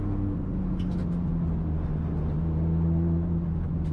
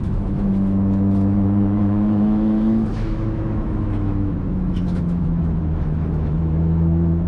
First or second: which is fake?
second